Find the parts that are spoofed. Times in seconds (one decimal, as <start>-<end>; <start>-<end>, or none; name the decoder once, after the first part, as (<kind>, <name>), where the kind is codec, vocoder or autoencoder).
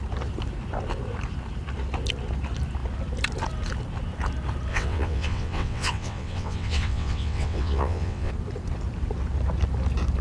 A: 4.7-8.3 (vocoder, WaveNeXt)